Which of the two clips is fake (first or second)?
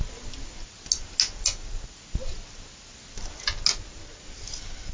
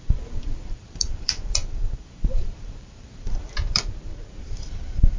second